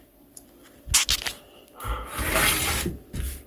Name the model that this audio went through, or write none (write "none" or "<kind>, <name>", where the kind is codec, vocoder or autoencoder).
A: none